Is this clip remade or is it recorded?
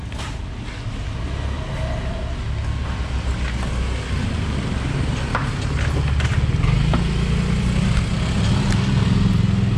recorded